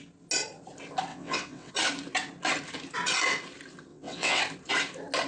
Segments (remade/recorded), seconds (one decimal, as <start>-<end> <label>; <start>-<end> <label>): 0.0-1.1 recorded; 1.1-1.7 remade; 1.7-3.9 recorded; 3.9-4.4 remade; 4.4-5.3 recorded